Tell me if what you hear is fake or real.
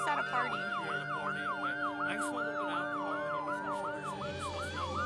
real